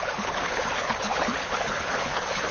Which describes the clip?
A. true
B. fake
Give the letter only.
B